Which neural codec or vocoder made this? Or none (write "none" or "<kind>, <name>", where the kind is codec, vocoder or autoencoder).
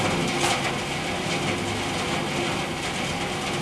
none